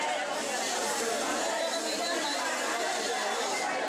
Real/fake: real